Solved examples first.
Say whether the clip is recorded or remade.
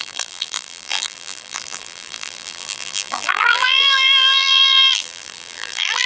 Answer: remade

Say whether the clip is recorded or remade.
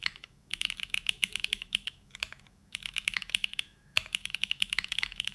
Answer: remade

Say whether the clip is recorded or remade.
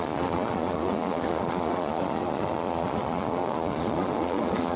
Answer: remade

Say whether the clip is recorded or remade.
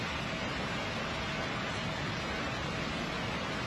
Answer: recorded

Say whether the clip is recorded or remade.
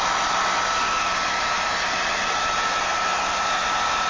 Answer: recorded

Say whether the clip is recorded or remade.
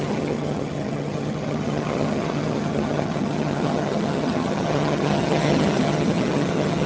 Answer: remade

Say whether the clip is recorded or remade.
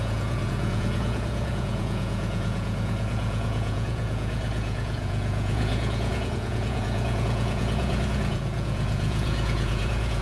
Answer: remade